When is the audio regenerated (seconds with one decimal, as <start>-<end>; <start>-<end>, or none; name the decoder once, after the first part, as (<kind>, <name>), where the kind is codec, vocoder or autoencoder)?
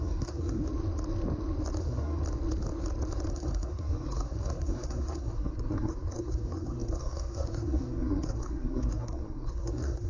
0.0-0.6 (codec, SNAC); 1.8-2.2; 3.3-10.1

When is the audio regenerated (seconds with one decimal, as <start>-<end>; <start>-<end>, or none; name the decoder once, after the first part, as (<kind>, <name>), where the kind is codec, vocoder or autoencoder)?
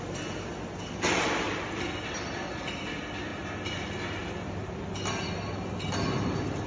none